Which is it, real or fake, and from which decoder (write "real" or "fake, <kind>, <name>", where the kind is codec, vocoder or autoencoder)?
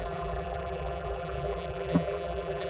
fake, vocoder, BigVGAN v2